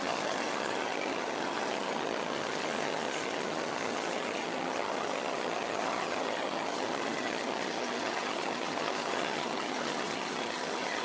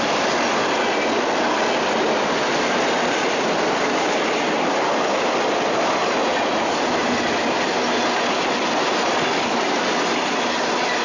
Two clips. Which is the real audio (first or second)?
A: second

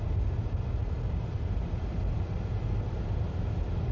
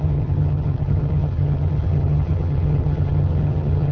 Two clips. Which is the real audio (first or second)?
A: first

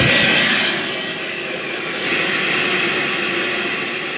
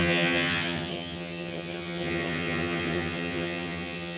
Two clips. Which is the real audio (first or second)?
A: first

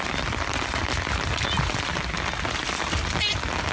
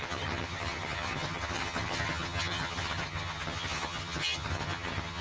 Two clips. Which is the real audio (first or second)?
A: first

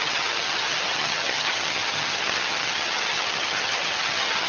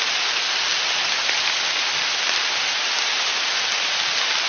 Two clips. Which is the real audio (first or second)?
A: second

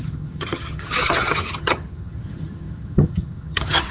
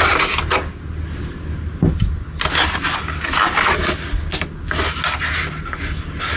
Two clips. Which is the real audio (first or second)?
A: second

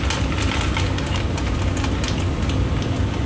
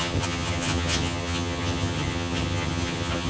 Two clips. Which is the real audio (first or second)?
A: first